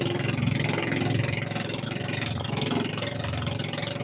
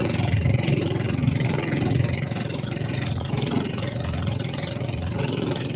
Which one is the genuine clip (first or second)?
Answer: first